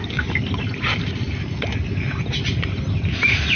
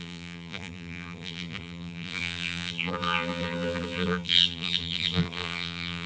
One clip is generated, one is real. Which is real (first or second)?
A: first